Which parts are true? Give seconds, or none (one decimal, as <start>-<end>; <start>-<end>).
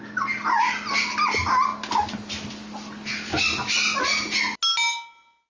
0.0-5.5